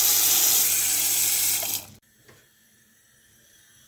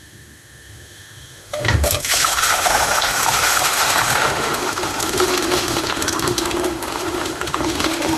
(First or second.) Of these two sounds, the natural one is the first